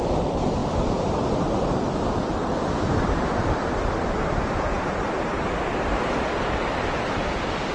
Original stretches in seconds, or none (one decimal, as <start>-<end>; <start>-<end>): 0.0-0.6; 5.2-7.7